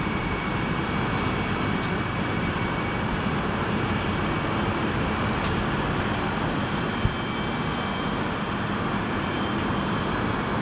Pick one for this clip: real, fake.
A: fake